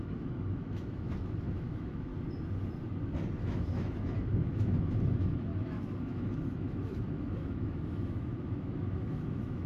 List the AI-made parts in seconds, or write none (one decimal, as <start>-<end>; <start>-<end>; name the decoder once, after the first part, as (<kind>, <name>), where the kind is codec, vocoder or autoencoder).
0.0-2.1 (autoencoder, DAC-VAE); 3.4-9.7